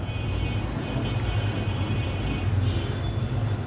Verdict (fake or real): real